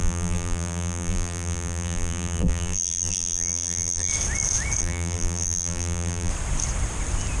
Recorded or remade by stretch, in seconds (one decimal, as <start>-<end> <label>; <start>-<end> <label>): 0.0-4.1 remade; 4.1-4.8 recorded; 4.8-6.3 remade; 6.3-7.4 recorded